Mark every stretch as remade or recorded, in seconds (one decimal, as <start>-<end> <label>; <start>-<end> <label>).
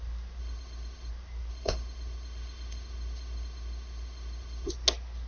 0.0-0.4 recorded; 0.4-1.1 remade; 1.1-1.5 recorded; 1.5-4.7 remade; 4.7-5.3 recorded